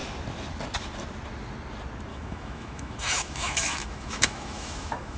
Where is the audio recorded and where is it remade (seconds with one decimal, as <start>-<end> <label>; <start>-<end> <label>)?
0.0-2.1 recorded; 2.1-5.2 remade